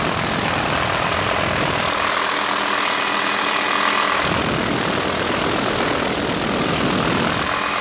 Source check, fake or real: real